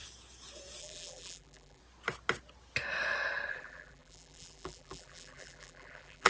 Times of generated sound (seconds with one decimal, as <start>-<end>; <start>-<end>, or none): 0.8-1.8; 3.5-6.3